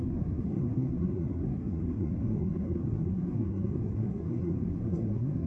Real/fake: fake